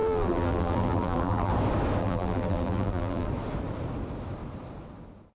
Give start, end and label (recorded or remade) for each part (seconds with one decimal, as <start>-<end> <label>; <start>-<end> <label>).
0.0-1.5 remade; 1.5-2.0 recorded; 2.0-3.3 remade; 3.3-5.3 recorded

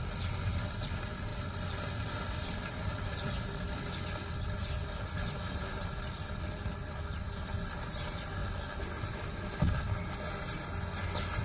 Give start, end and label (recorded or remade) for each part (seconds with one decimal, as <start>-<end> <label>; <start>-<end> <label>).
0.0-11.4 recorded